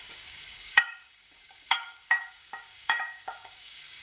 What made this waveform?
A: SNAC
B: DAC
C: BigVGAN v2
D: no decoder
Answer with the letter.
B